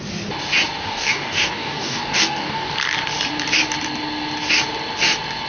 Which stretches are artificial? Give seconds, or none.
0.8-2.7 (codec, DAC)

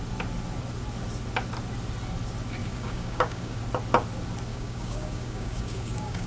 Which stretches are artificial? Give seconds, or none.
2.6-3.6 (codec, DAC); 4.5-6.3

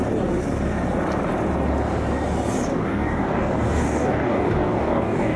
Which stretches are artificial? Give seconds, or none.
2.7-5.4 (codec, DAC)

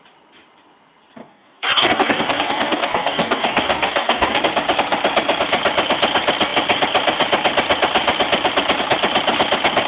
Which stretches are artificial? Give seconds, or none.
1.2-4.4 (codec, DAC)

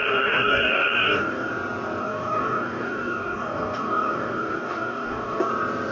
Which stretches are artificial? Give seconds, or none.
0.0-1.5 (codec, DAC); 2.0-5.5

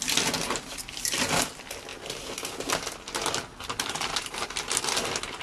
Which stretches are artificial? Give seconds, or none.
none